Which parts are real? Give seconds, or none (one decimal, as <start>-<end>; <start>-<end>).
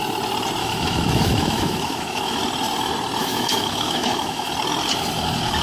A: 0.0-0.6; 2.4-3.2; 4.5-5.6